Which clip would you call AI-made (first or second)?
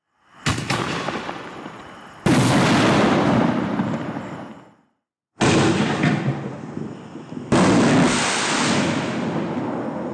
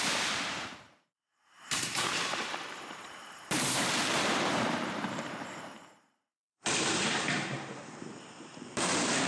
second